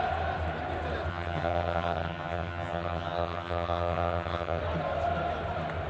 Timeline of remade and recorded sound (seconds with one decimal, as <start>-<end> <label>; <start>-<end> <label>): 0.0-1.1 recorded; 1.1-4.6 remade; 4.6-5.9 recorded